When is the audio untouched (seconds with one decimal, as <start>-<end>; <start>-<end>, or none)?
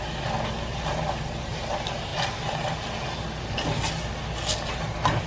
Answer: 0.0-5.3